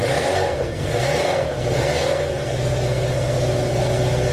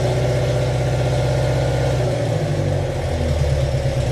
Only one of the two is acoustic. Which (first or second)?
second